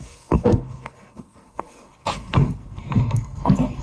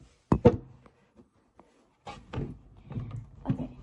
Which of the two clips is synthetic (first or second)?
first